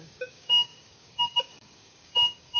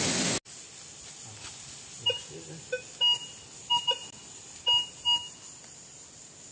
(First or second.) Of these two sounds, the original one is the second